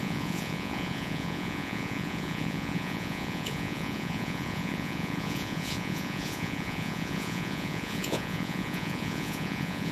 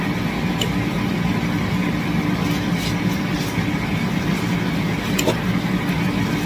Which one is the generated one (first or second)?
first